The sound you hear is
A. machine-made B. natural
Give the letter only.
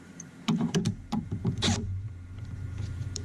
A